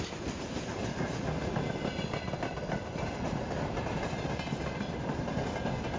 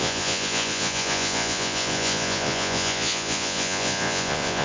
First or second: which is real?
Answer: first